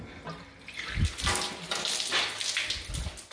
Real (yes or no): yes